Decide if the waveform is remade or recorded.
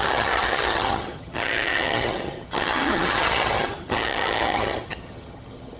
remade